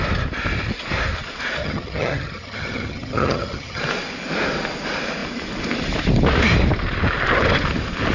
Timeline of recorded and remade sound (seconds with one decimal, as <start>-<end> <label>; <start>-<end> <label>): 0.0-1.6 recorded; 1.6-3.8 remade; 3.8-8.1 recorded